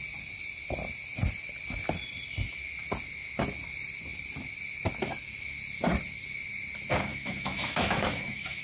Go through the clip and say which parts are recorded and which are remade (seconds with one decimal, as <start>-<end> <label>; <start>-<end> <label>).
0.0-7.1 recorded; 7.1-8.6 remade